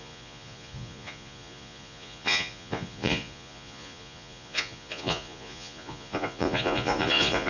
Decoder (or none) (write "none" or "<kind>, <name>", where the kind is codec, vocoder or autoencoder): vocoder, Vocos